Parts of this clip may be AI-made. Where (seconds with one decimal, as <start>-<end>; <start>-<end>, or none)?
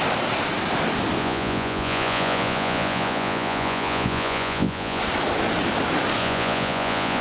1.2-5.0; 6.2-7.2